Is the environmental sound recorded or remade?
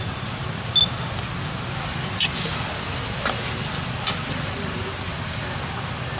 recorded